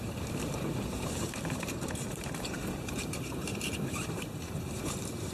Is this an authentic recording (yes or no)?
no